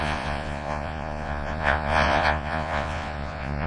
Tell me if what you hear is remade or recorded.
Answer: remade